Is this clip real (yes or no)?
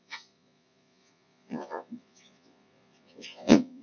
no